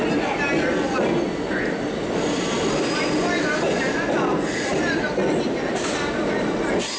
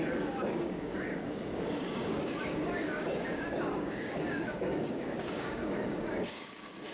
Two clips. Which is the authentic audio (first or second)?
first